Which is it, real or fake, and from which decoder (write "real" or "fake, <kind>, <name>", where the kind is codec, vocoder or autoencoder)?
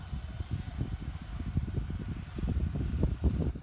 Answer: fake, vocoder, BigVGAN v2